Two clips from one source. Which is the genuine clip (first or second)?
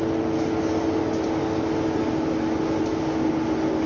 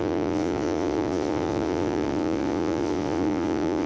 first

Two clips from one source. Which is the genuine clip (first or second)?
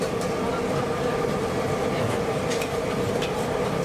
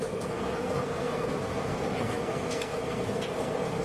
first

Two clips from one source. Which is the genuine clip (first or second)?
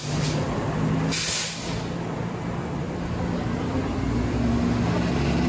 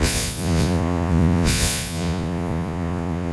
first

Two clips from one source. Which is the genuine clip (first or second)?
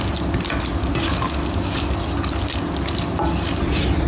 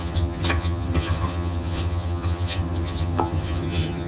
first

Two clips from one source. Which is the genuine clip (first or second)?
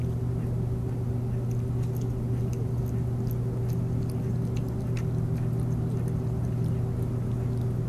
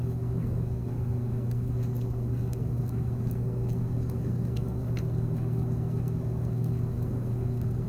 first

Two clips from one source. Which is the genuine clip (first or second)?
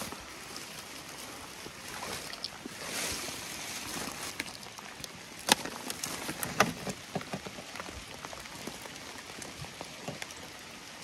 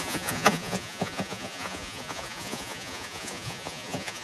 first